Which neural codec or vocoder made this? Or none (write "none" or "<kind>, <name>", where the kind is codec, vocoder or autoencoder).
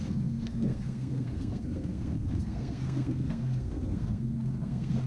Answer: codec, SNAC